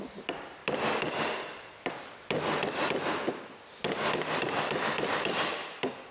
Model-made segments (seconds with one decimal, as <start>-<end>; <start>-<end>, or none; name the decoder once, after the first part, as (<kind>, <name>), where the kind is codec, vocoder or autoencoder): none